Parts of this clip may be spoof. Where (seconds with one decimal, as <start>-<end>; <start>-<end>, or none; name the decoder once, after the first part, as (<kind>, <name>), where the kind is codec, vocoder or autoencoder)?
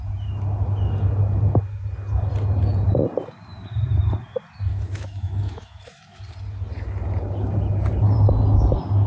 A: 4.7-6.2 (autoencoder, DAC-VAE)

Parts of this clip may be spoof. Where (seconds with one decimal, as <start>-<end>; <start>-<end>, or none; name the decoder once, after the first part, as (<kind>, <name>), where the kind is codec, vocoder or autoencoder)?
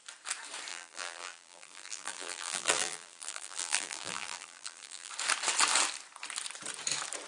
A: 0.7-5.1 (vocoder, BigVGAN v2)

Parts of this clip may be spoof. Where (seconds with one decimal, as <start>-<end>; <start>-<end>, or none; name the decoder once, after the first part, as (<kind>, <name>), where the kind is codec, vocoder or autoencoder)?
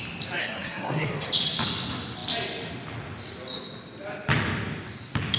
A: 0.4-1.3 (codec, SNAC)